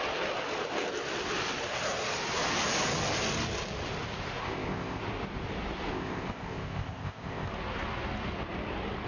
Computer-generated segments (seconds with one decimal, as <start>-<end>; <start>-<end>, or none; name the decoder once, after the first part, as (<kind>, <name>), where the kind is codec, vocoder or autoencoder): 4.4-5.0 (codec, ZipCodec); 5.9-7.5

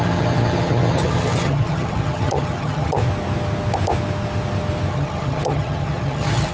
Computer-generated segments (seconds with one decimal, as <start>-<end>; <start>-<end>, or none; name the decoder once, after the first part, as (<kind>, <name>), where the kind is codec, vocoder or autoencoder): 0.0-3.0 (vocoder, HiFi-GAN); 4.9-6.5

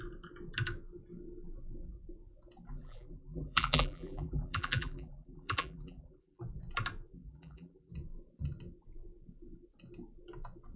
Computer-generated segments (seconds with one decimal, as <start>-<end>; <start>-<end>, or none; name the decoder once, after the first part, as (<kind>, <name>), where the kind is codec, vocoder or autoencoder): 2.7-6.4 (vocoder, BigVGAN v2); 7.1-7.9

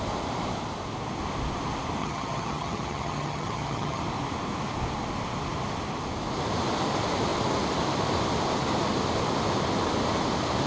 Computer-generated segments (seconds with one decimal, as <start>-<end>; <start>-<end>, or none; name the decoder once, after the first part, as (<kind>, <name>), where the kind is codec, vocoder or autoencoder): 2.0-4.0 (vocoder, HiFi-GAN)

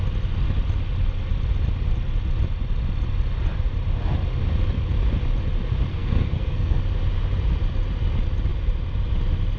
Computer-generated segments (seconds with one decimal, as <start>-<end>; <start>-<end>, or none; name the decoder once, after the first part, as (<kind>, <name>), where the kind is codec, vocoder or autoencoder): 5.9-6.8 (codec, SNAC)